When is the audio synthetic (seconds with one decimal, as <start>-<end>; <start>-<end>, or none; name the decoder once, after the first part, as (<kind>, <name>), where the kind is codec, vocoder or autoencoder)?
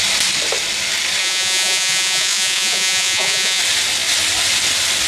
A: 1.2-3.6 (vocoder, Vocos)